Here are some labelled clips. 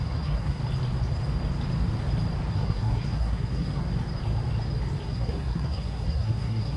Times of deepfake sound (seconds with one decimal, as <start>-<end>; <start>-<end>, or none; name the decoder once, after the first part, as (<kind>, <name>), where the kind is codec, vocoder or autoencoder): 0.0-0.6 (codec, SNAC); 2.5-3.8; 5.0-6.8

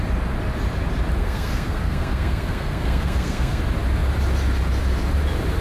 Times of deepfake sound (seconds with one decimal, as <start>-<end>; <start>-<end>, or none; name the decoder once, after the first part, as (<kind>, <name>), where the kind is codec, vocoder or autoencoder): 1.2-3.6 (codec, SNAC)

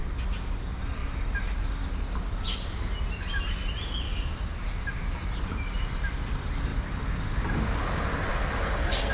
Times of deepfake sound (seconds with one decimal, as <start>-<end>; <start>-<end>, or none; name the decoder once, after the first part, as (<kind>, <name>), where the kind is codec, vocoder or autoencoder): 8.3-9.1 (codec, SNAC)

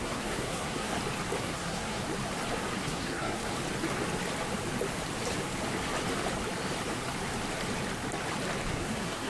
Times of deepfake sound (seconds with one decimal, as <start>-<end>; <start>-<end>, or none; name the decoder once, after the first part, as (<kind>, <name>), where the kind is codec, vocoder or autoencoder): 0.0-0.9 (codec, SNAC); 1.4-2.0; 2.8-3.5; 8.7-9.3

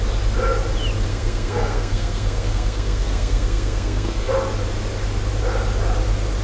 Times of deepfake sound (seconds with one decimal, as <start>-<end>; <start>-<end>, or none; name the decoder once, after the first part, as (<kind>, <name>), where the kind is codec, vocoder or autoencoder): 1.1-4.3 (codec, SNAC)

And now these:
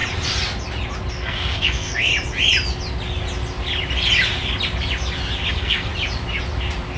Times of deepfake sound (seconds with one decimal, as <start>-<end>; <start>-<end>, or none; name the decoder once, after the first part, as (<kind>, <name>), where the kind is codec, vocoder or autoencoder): 1.1-2.1 (codec, SNAC); 5.5-5.9

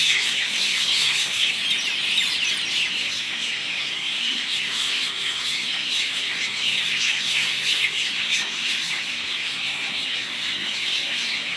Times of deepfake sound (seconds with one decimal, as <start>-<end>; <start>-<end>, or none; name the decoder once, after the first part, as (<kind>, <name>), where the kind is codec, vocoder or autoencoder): 0.0-1.6 (codec, SNAC); 2.9-11.6